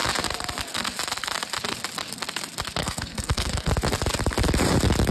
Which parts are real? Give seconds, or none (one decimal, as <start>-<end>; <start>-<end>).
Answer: 0.0-2.8; 3.7-5.1